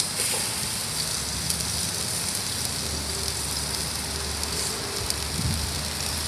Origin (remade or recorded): recorded